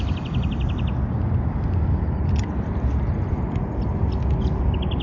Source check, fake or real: real